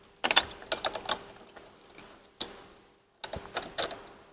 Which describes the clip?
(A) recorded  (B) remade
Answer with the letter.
A